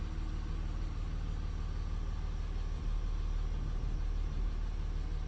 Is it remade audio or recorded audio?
recorded